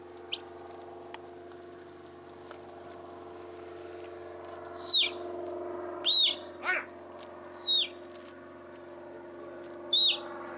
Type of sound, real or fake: real